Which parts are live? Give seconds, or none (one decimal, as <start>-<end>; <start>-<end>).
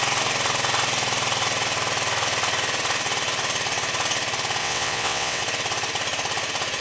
0.0-4.6; 5.4-6.8